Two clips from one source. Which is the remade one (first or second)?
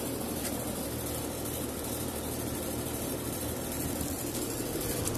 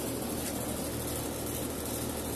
first